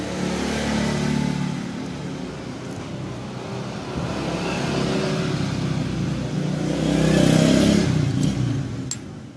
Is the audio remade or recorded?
recorded